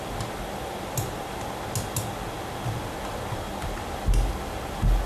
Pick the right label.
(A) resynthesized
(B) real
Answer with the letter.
B